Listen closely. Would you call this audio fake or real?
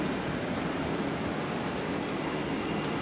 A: real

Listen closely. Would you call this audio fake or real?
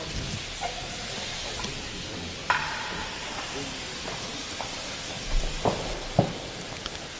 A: real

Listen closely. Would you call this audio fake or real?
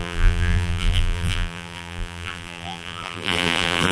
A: fake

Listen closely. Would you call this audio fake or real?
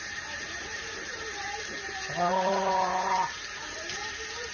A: fake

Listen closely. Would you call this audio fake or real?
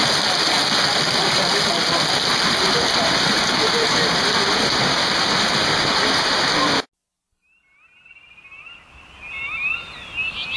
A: real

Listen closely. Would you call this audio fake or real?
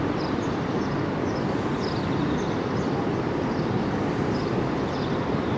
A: fake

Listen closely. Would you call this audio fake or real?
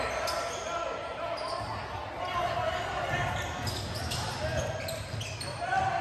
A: real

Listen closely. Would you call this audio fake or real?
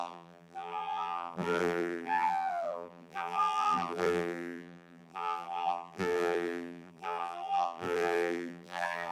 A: fake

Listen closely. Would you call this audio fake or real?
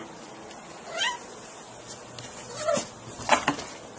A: real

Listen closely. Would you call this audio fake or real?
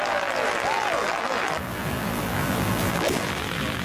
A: fake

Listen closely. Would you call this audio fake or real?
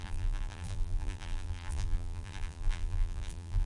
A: fake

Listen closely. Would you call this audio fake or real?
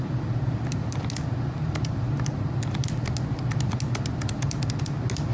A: real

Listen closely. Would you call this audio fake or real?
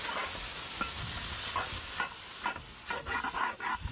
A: real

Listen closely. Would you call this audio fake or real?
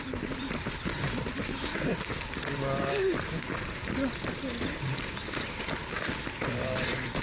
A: fake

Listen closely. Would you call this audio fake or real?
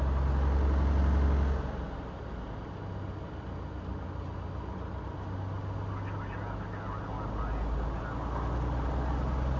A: real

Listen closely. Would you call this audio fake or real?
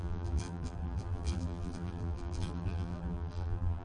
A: fake